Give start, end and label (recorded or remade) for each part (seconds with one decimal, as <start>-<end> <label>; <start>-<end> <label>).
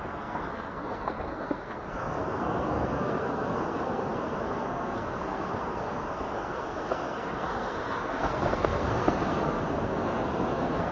0.0-10.9 remade